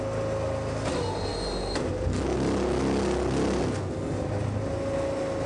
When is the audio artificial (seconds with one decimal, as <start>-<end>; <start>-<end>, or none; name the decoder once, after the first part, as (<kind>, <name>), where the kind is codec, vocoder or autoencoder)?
none